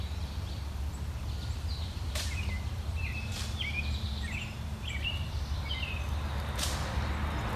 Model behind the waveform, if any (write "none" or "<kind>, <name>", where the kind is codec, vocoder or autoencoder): none